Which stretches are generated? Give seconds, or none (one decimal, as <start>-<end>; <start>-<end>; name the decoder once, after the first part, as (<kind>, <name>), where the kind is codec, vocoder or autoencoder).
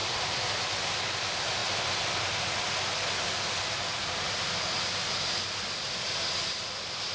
0.0-0.8 (vocoder, BigVGAN v2)